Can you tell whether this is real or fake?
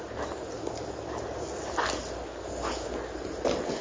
real